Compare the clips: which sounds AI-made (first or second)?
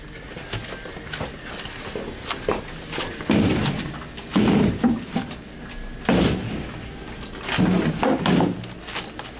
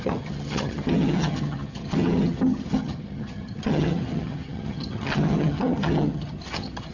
second